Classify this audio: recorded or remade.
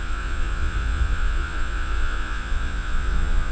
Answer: remade